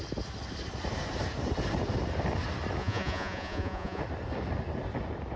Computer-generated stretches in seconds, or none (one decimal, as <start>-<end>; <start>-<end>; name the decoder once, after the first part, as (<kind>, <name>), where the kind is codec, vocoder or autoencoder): 2.8-4.0 (vocoder, Vocos)